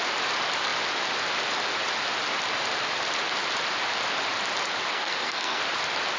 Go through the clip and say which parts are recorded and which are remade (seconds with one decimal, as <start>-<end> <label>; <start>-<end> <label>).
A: 0.0-4.9 recorded; 4.9-5.6 remade; 5.6-6.2 recorded

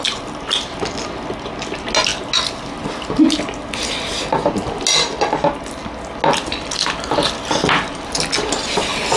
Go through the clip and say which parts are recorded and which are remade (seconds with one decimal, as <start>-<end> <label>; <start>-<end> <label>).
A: 0.0-9.2 recorded

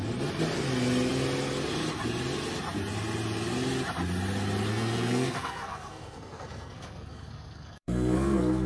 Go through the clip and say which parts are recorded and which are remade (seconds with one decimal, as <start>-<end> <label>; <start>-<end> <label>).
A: 0.0-4.7 recorded; 4.7-8.7 remade

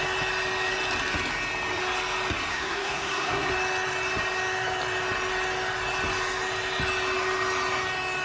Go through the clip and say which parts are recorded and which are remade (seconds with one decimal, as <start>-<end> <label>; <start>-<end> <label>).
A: 0.0-2.5 recorded; 2.5-3.5 remade; 3.5-8.2 recorded

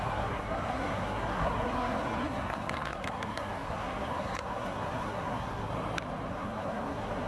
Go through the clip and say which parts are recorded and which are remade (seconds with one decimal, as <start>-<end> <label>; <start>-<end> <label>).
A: 0.0-5.7 remade; 5.7-6.3 recorded; 6.3-7.3 remade

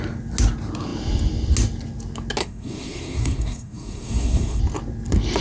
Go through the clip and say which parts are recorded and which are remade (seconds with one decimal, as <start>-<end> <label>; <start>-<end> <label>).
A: 0.0-2.4 recorded; 2.4-4.6 remade; 4.6-5.4 recorded

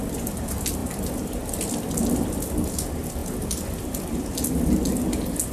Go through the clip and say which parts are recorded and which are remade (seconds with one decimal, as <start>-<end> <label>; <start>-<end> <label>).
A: 0.0-5.5 recorded